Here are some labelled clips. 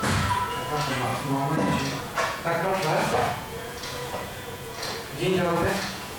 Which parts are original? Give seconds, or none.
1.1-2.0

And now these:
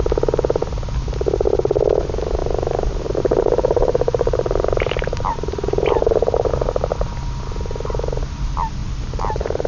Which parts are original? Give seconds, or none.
0.0-2.4; 6.0-8.8

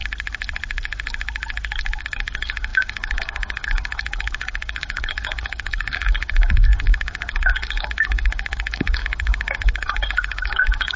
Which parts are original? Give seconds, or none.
0.0-2.0

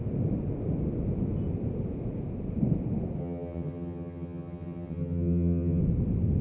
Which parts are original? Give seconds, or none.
0.0-3.2; 5.8-6.4

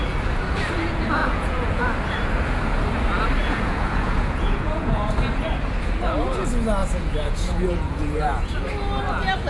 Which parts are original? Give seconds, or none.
0.0-1.2; 1.8-3.4; 5.1-6.8; 8.6-9.5

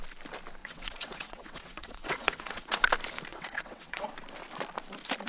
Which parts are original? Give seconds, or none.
0.0-0.6; 2.9-3.3; 4.1-5.3

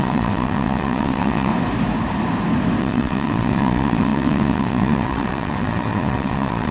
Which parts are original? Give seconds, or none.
1.5-2.8

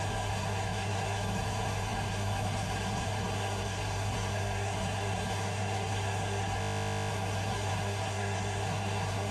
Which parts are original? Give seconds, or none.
6.6-7.1